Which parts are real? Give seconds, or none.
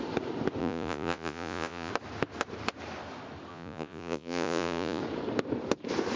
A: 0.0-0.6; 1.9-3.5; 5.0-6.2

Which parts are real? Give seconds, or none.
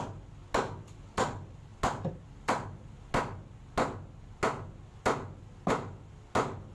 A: 0.0-6.7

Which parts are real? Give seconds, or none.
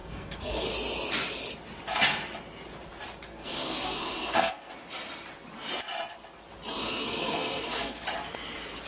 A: 0.7-3.3; 4.7-6.8; 8.0-8.9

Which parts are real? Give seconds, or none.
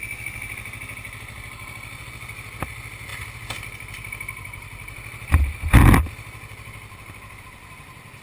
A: 0.0-8.2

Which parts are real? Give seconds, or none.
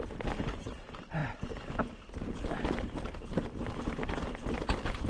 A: 0.0-5.1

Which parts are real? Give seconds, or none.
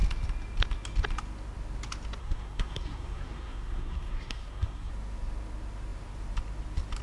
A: 0.0-2.2; 4.9-7.0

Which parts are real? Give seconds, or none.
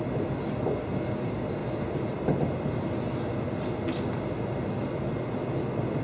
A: 0.0-6.0